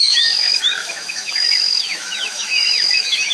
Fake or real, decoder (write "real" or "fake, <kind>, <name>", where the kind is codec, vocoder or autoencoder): fake, autoencoder, DAC-VAE